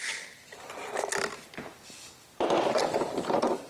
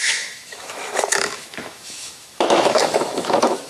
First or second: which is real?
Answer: first